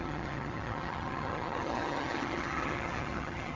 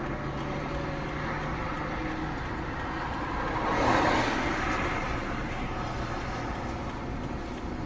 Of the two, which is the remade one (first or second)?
first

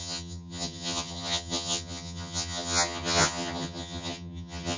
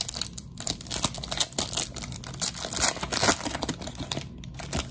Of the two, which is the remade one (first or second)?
first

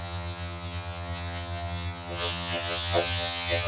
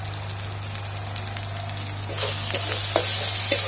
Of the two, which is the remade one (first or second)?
first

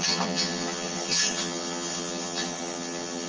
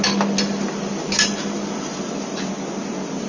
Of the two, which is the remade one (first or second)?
first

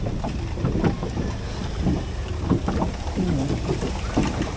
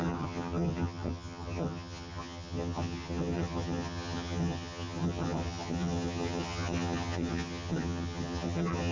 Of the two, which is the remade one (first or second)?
second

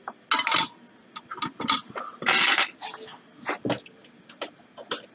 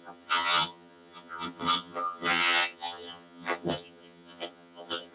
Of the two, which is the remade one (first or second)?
second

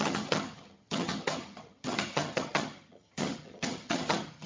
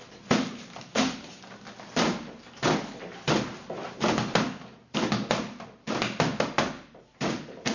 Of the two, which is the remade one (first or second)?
first